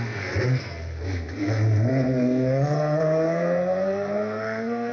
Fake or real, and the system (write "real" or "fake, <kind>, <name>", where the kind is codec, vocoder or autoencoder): fake, codec, SNAC